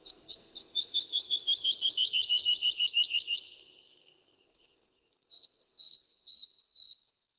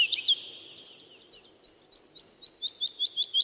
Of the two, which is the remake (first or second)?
first